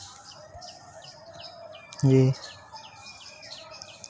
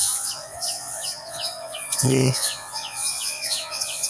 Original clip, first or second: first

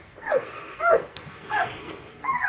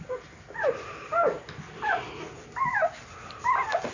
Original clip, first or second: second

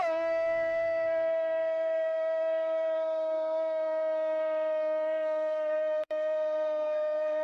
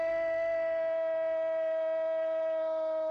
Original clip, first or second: second